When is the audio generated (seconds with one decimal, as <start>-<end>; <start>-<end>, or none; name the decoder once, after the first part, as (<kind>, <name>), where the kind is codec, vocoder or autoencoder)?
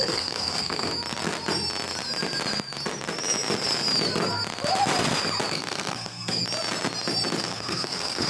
0.0-0.9 (codec, SNAC); 5.5-6.4; 7.4-8.3